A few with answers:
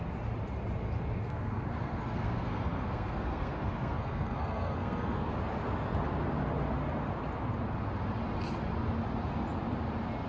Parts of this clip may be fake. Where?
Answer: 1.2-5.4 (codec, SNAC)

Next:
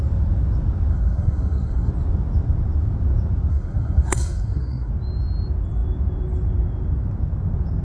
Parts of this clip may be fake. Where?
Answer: 0.9-1.9 (codec, SNAC); 3.5-4.9

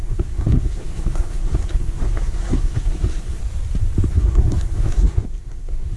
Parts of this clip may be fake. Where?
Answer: 0.0-3.4 (codec, SNAC); 4.1-6.0

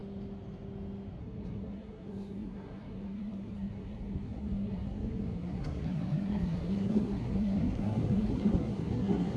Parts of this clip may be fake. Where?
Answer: 1.2-9.4 (codec, SNAC)